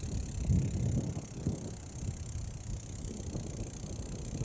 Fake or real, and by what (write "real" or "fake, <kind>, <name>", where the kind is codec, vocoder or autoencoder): real